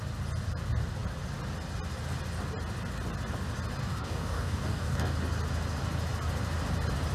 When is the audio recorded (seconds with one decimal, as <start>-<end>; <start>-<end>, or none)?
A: 0.0-3.8; 5.2-7.1